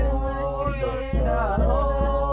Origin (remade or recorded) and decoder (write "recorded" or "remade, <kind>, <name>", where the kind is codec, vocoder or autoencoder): recorded